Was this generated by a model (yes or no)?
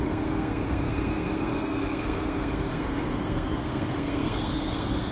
yes